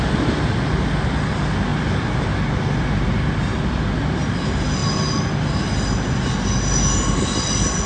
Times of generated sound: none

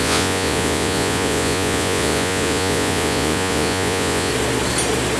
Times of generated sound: 0.0-4.3 (vocoder, Vocos)

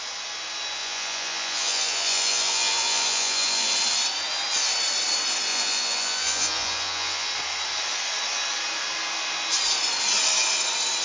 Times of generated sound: 0.8-3.7 (vocoder, Vocos); 5.5-7.3

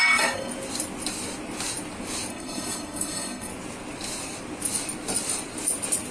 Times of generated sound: 0.0-0.5 (codec, SNAC); 2.3-3.5

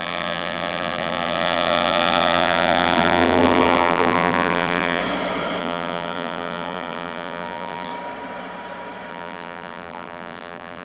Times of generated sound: 0.0-5.0 (vocoder, BigVGAN v2); 5.6-7.9; 9.1-10.8

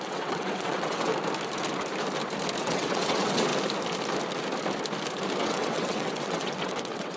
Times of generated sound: 0.0-1.1 (vocoder, WaveNeXt); 2.6-3.5; 5.4-7.2

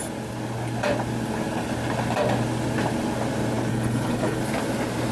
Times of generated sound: 3.7-4.4 (codec, HILCodec)